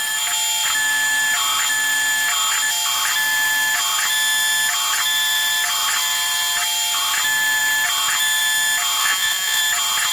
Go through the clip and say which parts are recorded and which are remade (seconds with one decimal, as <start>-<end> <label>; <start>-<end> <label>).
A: 0.0-9.0 recorded; 9.0-9.6 remade; 9.6-10.1 recorded